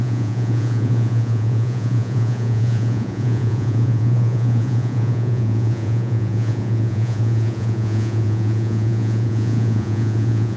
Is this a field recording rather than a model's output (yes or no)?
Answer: no